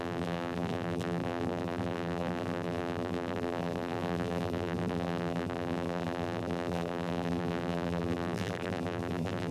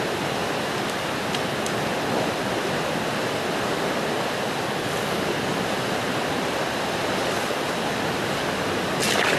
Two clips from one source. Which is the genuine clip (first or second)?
second